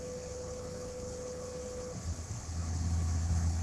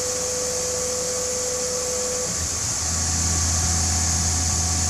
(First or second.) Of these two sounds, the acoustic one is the second